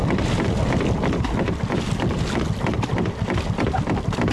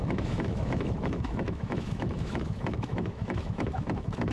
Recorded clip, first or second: first